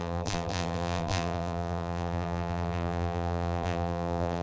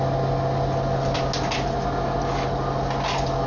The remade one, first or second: first